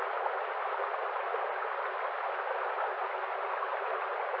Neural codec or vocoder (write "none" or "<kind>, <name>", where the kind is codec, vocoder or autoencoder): none